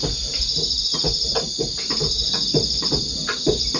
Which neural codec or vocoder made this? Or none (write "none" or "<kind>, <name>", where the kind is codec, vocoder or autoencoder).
none